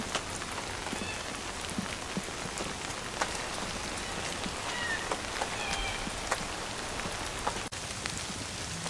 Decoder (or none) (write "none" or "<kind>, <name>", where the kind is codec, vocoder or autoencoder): none